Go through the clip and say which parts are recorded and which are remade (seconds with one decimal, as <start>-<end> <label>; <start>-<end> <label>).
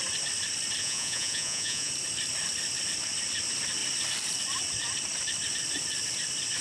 0.0-0.8 recorded; 0.8-1.9 remade; 1.9-6.6 recorded